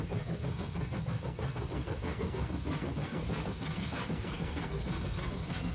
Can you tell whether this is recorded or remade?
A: remade